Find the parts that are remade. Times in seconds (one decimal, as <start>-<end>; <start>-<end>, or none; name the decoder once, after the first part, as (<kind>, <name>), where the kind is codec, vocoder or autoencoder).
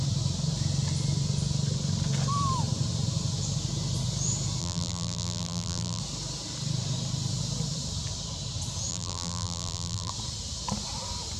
4.6-6.0 (vocoder, BigVGAN v2); 8.9-10.1